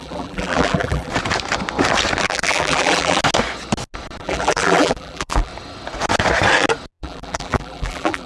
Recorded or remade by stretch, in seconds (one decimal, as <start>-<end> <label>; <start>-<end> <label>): 0.0-1.1 remade; 1.1-2.2 recorded; 2.2-3.2 remade; 3.2-4.2 recorded; 4.2-5.5 remade; 5.5-7.0 recorded; 7.0-8.3 remade